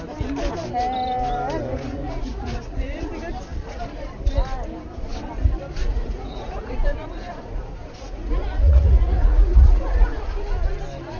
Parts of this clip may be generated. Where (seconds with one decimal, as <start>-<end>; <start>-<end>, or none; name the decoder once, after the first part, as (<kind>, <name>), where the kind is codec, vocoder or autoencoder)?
1.9-3.1 (vocoder, Vocos); 5.8-10.2